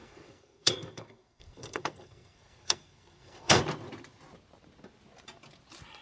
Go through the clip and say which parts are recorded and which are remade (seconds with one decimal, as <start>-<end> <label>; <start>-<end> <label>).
0.0-3.6 remade; 3.6-6.0 recorded